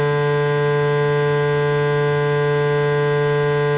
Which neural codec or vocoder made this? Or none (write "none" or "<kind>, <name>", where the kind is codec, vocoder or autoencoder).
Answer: none